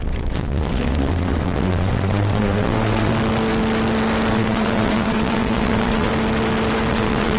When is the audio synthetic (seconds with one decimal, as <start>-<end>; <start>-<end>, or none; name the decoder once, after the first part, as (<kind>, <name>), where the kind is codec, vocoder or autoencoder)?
0.0-3.1 (vocoder, WaveNeXt); 4.3-6.1; 6.9-7.4